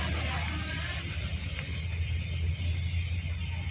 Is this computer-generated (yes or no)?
no